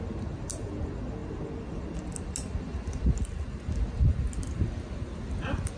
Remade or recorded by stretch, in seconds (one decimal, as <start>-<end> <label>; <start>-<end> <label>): 0.0-5.8 recorded